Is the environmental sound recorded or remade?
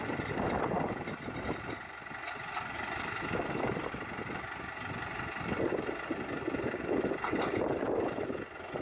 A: recorded